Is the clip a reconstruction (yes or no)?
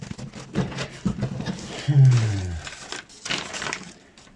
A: no